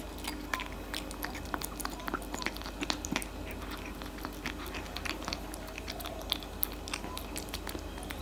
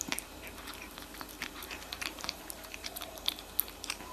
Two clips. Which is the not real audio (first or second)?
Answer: second